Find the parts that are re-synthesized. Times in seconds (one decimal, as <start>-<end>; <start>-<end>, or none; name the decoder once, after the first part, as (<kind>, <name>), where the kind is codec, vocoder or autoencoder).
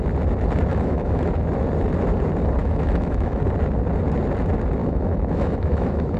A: 0.7-1.3 (autoencoder, DAC-VAE); 2.6-3.4; 4.8-6.2